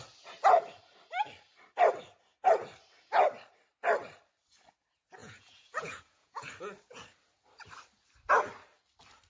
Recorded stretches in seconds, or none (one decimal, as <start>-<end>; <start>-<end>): 0.0-5.2; 6.5-9.3